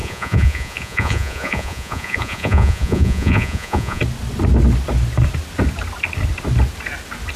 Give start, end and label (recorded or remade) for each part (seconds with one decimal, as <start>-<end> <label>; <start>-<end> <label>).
0.0-4.0 remade; 4.0-7.4 recorded